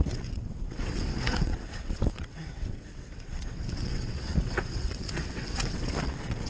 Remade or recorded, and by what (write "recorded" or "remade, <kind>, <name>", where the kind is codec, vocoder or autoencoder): remade, vocoder, WaveNeXt